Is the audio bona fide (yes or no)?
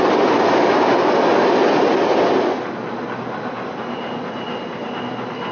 yes